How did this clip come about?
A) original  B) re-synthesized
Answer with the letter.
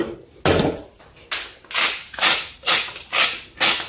A